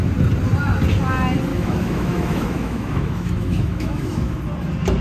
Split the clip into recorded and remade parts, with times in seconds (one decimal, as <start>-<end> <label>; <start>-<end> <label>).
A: 0.0-1.5 recorded; 1.5-4.4 remade; 4.4-5.0 recorded